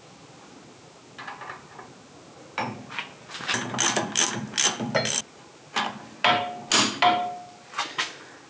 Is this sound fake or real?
real